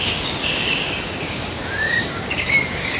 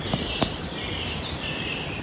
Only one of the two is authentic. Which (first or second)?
second